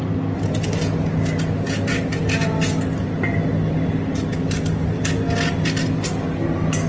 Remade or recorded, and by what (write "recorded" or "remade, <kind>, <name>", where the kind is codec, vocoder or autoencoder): recorded